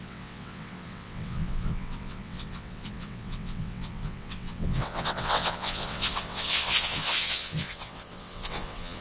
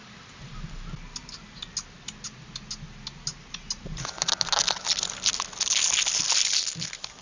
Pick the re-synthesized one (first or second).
first